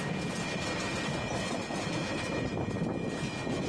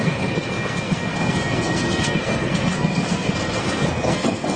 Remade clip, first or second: second